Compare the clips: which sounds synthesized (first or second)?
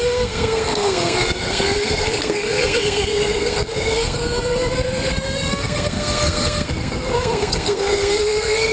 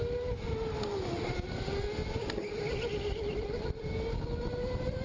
first